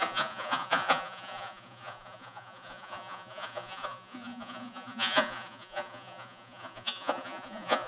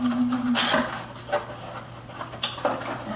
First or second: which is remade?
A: first